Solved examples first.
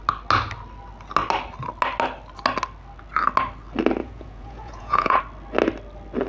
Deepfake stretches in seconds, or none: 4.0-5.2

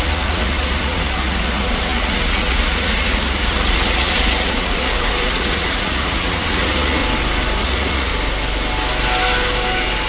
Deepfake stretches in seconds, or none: 0.0-7.0; 7.6-8.1

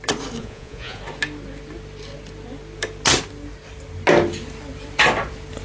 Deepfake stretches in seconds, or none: 0.4-1.0

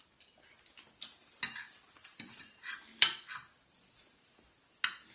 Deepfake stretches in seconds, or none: 2.0-2.6

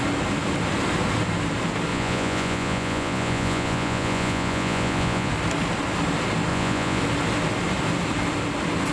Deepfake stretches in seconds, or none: 1.9-5.3; 6.5-7.0